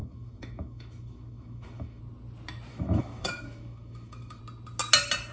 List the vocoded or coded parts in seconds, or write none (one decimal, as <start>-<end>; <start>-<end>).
0.0-2.0; 2.7-4.4